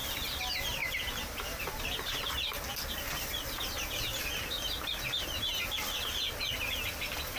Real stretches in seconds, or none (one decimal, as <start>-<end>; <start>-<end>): 0.0-7.4